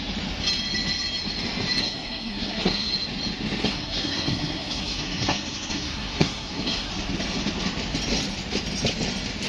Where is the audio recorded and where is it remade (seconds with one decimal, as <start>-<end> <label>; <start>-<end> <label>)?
0.0-1.8 recorded; 1.8-2.9 remade; 2.9-3.6 recorded; 3.6-6.9 remade; 6.9-9.5 recorded